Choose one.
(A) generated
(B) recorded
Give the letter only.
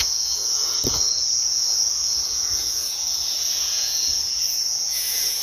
A